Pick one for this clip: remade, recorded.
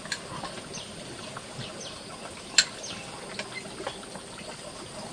recorded